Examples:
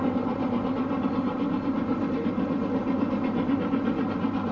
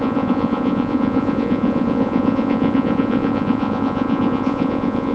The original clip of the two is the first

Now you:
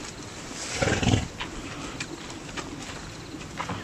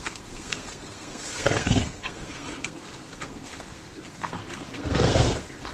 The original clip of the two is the first